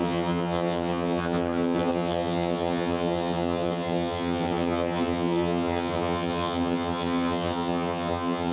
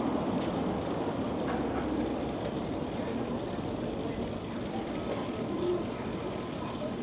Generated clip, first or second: first